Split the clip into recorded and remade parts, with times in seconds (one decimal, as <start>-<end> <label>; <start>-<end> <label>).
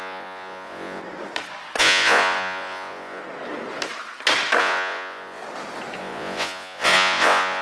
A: 0.0-1.0 remade; 1.0-1.8 recorded; 1.8-3.2 remade; 3.2-4.6 recorded; 4.6-5.4 remade; 5.4-6.0 recorded; 6.0-7.6 remade